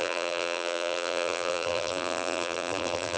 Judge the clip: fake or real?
fake